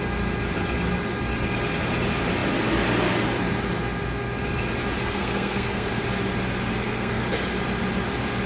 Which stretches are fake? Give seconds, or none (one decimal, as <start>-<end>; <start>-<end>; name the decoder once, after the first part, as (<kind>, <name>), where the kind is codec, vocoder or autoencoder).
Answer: 5.0-6.0 (codec, SNAC); 6.7-7.2